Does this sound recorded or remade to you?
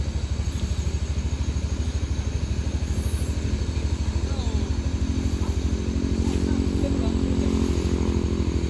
recorded